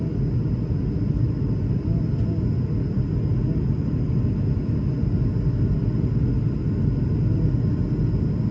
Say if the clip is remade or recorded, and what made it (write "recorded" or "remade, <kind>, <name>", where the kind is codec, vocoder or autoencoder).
recorded